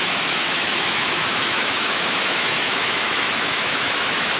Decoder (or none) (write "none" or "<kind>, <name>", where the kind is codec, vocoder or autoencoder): autoencoder, DAC-VAE